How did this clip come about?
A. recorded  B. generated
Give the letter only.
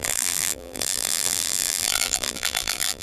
B